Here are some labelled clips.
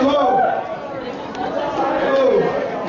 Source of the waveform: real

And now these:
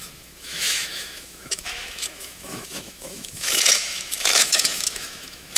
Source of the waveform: fake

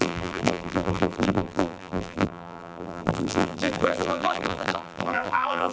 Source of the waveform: fake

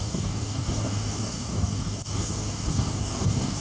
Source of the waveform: fake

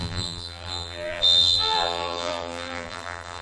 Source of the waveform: fake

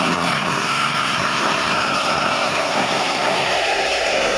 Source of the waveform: fake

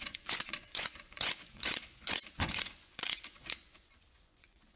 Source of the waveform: fake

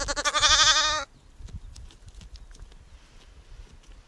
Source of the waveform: real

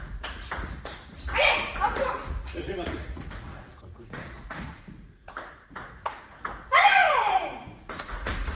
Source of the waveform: fake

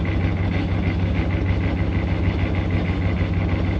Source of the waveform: real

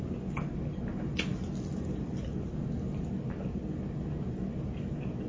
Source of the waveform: real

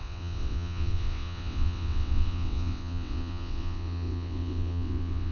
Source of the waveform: fake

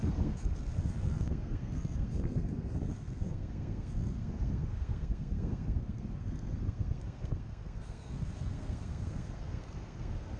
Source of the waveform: fake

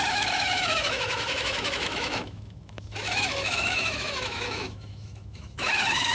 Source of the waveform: fake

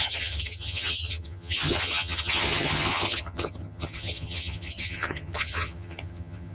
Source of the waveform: fake